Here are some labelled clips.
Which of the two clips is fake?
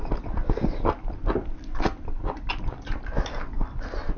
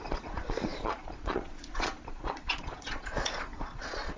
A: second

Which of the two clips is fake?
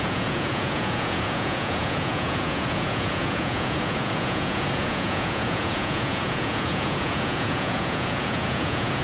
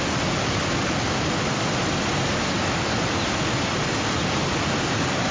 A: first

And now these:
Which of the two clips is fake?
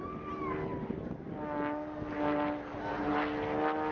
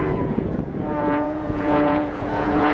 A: second